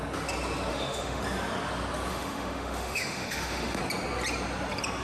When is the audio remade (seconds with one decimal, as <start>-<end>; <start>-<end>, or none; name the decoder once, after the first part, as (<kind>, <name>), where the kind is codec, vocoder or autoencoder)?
0.7-1.2 (autoencoder, DAC-VAE); 2.1-3.8